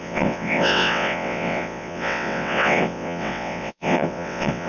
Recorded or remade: remade